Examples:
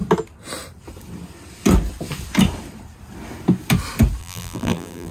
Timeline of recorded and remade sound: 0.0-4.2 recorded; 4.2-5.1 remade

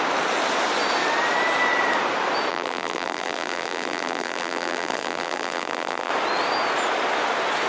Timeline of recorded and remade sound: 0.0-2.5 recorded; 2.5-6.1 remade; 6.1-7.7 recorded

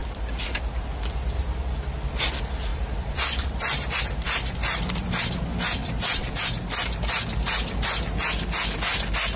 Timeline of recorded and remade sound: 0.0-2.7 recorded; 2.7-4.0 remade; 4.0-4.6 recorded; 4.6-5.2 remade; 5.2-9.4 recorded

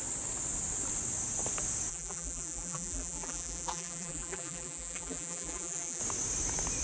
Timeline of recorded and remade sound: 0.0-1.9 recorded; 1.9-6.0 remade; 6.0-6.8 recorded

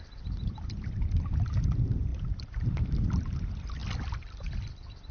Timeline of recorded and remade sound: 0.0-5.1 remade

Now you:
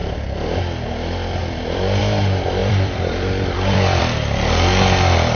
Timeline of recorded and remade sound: 0.0-0.6 remade; 0.6-1.4 recorded; 1.4-2.0 remade; 2.0-2.6 recorded; 2.6-4.0 remade; 4.0-5.3 recorded

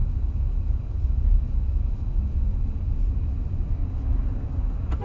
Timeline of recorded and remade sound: 0.0-3.0 recorded; 3.0-3.8 remade; 3.8-5.0 recorded

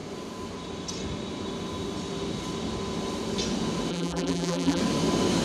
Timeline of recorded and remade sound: 0.0-3.9 recorded; 3.9-4.8 remade; 4.8-5.4 recorded